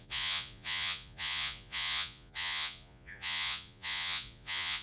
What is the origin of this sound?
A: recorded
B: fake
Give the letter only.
B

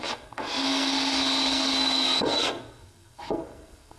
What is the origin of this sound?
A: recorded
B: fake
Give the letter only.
B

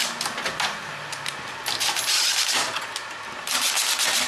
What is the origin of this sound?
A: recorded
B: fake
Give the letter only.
A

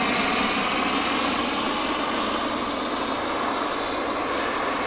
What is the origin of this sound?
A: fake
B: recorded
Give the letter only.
B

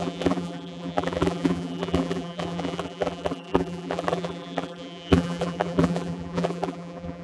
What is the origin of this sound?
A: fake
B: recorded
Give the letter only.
A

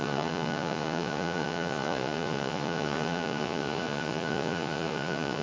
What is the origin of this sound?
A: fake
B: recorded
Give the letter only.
A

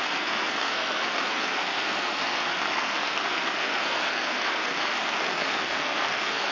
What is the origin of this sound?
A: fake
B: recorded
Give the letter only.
A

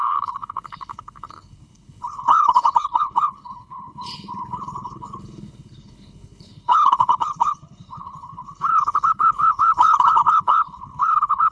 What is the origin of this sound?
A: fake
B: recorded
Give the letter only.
A